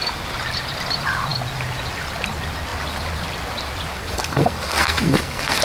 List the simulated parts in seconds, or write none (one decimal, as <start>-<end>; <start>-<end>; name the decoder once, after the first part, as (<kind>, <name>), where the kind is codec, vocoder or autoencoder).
3.9-5.6 (codec, SNAC)